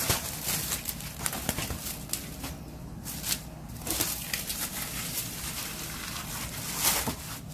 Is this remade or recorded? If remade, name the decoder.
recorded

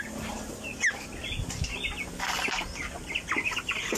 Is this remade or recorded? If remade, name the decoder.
recorded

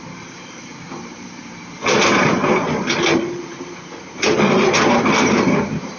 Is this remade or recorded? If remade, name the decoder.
remade, vocoder, BigVGAN v2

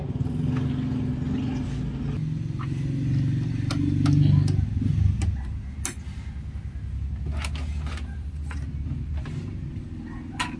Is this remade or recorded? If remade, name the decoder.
recorded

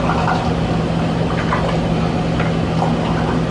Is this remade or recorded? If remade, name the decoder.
recorded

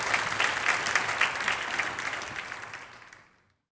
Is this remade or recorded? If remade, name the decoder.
recorded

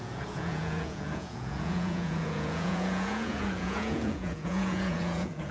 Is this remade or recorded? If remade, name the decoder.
remade, vocoder, Vocos